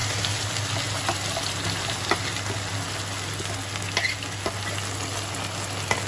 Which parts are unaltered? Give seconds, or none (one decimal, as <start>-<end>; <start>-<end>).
0.0-6.1